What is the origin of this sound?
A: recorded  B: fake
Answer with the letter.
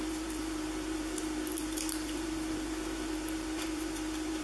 B